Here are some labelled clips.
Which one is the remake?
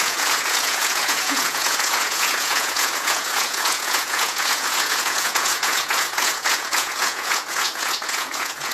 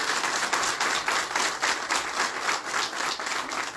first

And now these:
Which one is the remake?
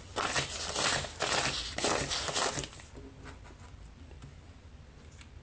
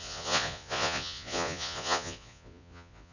second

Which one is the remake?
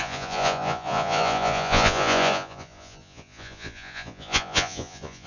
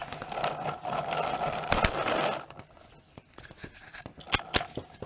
first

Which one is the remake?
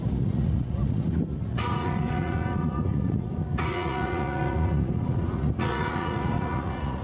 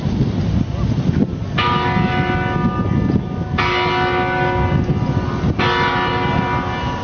first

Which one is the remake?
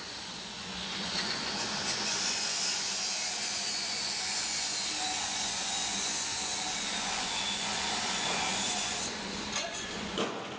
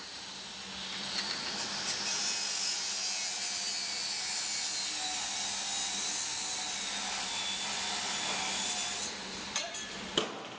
first